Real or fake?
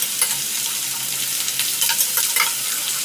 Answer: real